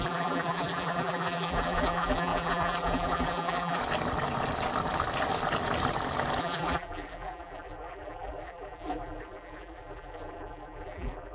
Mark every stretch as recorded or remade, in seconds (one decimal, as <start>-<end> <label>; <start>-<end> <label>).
0.0-3.8 remade; 3.8-6.4 recorded; 6.4-11.3 remade